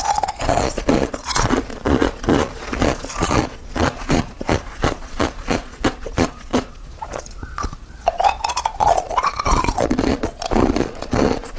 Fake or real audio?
fake